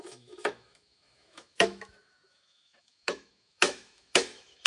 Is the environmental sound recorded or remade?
remade